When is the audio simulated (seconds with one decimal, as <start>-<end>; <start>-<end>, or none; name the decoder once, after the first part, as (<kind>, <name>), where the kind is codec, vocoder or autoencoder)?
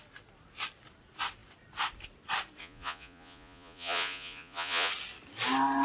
2.6-4.9 (vocoder, Vocos)